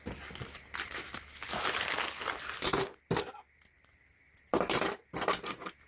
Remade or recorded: recorded